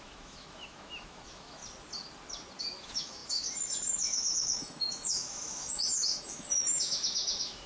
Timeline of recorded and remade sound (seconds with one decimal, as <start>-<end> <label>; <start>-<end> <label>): 0.0-1.6 remade; 1.6-2.6 recorded; 2.6-7.7 remade